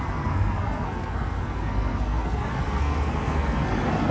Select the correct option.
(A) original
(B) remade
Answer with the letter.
B